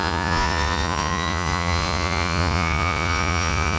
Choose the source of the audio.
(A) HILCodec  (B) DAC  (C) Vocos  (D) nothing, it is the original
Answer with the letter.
C